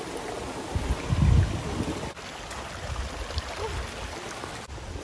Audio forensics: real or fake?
real